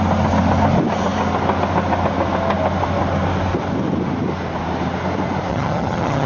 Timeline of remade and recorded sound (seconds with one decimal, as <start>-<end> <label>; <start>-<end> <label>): 0.0-5.5 recorded; 5.5-6.3 remade